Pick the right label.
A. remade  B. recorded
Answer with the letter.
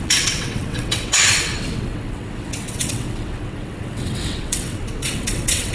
A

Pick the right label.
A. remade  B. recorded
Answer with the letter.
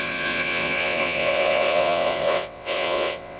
A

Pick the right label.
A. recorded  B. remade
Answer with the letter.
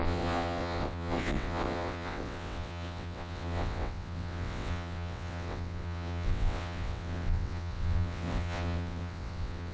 B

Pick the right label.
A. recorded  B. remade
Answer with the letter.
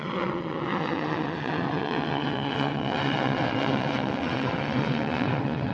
B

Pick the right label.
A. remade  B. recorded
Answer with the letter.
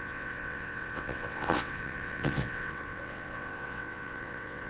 A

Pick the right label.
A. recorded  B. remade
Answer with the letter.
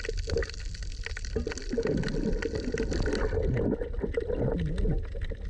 A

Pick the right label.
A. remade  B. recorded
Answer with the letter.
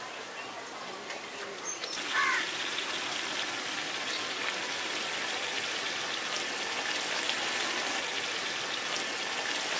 B